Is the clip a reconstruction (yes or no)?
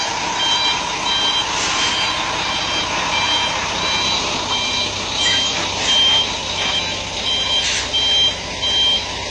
no